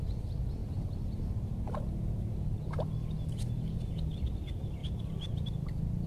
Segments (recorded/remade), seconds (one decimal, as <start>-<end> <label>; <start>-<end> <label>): 0.0-6.1 recorded